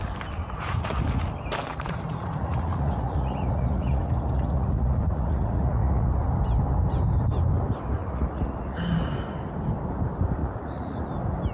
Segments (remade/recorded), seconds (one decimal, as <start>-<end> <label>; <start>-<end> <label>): 0.0-0.4 recorded; 0.4-1.0 remade; 1.0-1.7 recorded; 1.7-6.1 remade; 6.1-8.0 recorded; 8.0-8.8 remade; 8.8-10.4 recorded; 10.4-11.1 remade; 11.1-11.5 recorded